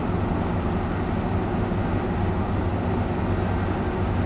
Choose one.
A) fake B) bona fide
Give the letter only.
B